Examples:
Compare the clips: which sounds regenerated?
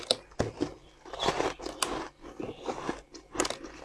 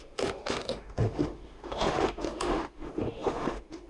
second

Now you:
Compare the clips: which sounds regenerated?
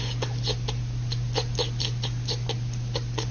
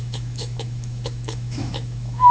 second